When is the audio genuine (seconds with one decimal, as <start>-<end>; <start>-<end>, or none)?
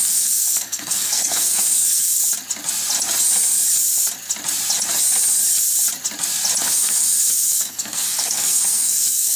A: 2.2-6.6